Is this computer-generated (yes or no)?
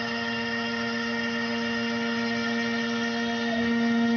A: no